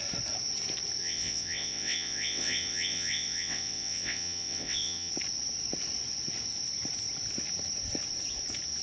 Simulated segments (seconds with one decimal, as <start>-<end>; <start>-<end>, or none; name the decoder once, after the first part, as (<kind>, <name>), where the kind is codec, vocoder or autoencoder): 1.0-5.1 (vocoder, WaveNeXt)

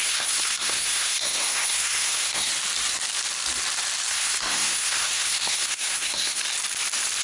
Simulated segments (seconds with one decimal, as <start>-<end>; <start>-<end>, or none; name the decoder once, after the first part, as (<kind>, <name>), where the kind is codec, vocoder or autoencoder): 0.0-2.5 (codec, SNAC); 4.1-6.4

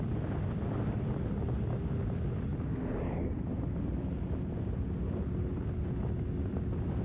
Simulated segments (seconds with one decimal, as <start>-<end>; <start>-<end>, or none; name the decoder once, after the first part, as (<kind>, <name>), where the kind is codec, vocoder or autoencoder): none

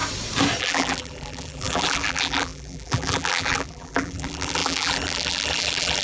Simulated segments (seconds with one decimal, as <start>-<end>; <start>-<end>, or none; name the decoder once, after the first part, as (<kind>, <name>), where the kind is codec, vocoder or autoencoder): 0.6-6.0 (vocoder, BigVGAN v2)

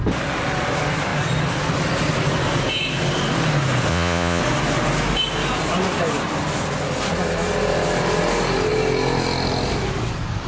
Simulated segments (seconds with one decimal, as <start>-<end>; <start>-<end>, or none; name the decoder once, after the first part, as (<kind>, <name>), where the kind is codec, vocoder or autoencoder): 3.9-4.4 (vocoder, Vocos)

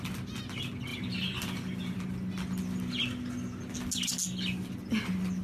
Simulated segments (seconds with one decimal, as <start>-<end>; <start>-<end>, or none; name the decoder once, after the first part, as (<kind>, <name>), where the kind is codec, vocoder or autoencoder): none

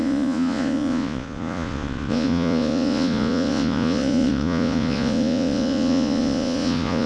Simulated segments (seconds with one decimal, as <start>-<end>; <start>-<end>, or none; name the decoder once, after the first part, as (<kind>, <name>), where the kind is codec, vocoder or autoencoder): 0.0-7.1 (vocoder, Vocos)